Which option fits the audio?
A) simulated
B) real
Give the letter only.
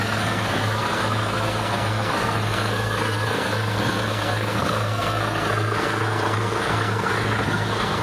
A